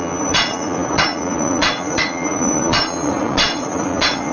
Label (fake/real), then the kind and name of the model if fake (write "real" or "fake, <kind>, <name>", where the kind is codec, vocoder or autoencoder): fake, vocoder, Vocos